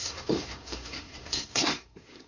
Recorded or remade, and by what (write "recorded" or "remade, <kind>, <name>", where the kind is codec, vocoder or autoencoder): remade, codec, SNAC